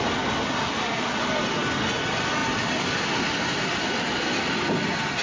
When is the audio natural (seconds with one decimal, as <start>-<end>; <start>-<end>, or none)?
0.0-5.2